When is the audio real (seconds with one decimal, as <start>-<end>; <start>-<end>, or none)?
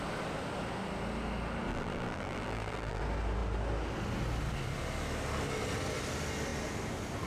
0.0-1.7; 3.0-7.3